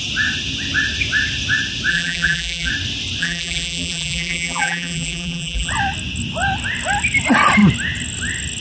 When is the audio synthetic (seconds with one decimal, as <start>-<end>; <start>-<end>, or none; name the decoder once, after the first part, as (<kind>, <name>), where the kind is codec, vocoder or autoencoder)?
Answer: 1.9-2.7 (vocoder, BigVGAN v2); 3.2-5.7